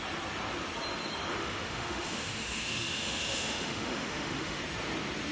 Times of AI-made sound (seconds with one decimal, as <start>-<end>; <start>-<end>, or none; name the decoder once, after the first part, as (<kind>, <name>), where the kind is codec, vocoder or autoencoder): 1.4-4.6 (autoencoder, DAC-VAE)